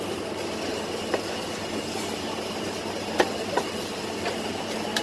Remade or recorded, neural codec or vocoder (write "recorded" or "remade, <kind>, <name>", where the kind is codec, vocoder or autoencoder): recorded